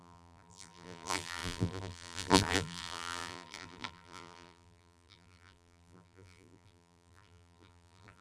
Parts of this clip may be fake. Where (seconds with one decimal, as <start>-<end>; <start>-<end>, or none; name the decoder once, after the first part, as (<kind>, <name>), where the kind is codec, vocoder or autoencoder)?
0.0-8.2 (vocoder, BigVGAN v2)